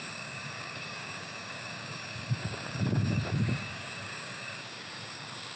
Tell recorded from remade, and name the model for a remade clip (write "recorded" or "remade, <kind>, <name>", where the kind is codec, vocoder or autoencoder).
remade, codec, DAC